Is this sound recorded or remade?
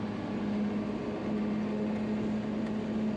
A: recorded